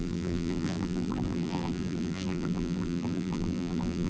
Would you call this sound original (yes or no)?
no